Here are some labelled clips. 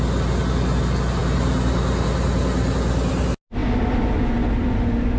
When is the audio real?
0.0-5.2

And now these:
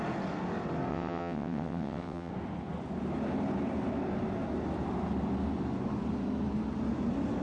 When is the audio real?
0.0-0.9; 2.3-7.4

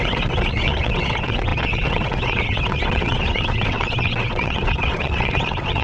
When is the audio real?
none

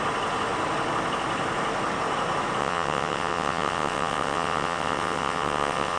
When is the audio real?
0.0-2.6